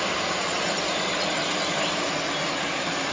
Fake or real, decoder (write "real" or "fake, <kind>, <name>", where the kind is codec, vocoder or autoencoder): real